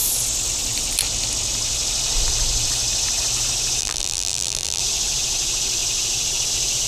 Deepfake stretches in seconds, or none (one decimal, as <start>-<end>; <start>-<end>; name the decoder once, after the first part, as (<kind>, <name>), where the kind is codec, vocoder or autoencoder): 3.8-4.8 (vocoder, BigVGAN v2)